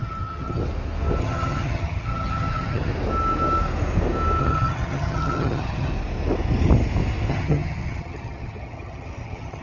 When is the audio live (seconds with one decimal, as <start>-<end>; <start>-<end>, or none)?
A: 0.6-1.2; 2.9-4.4; 5.9-7.3

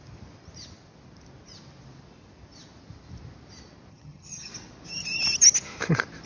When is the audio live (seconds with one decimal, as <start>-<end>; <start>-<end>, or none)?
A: 0.0-3.9; 4.5-6.3

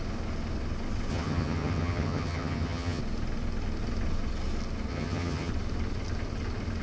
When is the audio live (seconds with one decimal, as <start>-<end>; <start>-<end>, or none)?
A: 0.0-1.1; 3.0-4.9; 5.5-6.8